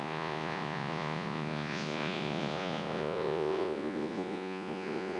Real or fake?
fake